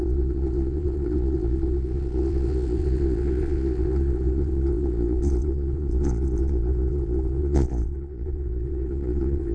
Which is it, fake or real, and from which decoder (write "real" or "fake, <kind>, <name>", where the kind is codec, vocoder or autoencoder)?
fake, vocoder, Vocos